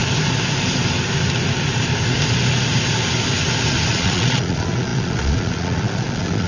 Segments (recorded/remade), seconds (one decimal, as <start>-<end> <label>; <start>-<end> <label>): 0.0-3.9 recorded; 3.9-6.5 remade